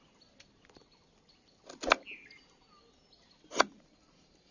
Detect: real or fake real